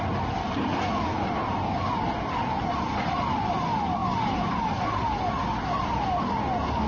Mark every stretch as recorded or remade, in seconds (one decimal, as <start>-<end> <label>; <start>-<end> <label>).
0.0-4.0 recorded; 4.0-6.2 remade; 6.2-6.9 recorded